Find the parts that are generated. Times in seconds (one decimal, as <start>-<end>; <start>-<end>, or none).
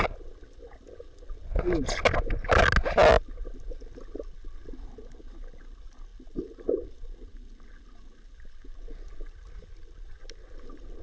none